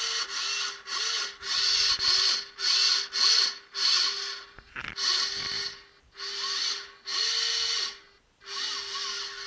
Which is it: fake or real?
real